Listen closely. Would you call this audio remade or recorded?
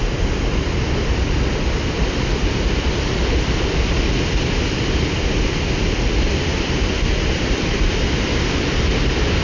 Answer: remade